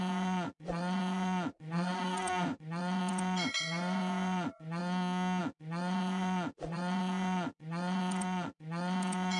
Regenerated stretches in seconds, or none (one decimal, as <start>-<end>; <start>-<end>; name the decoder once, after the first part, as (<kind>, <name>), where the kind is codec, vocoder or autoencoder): 0.0-4.8 (vocoder, Vocos); 5.4-9.4